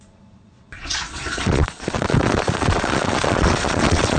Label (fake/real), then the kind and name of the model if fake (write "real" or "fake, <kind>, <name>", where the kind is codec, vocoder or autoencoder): fake, vocoder, Vocos